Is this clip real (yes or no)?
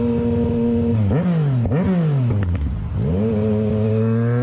yes